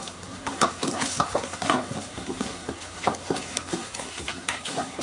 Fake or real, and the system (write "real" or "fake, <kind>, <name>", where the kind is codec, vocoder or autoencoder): fake, codec, SNAC